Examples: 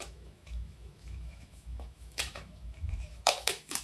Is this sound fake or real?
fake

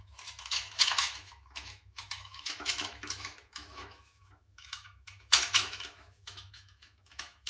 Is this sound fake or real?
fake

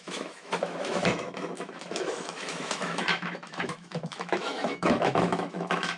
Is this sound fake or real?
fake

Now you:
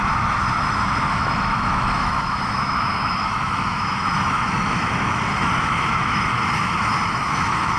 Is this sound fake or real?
fake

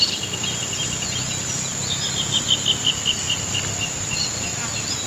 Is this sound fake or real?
real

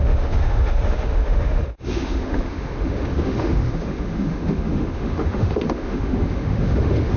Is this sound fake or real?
fake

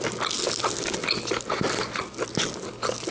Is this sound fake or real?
real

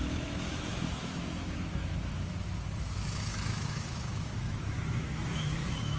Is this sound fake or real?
fake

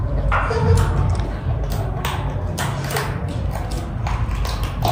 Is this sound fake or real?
real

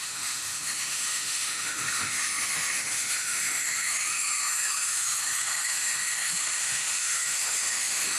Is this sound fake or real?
fake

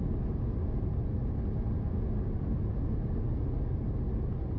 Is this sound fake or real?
real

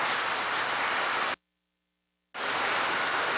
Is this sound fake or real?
real